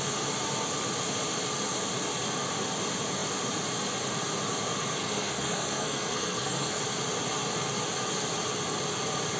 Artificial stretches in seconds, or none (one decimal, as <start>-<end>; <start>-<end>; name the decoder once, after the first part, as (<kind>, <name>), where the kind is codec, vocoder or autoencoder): 5.0-6.8 (codec, SNAC)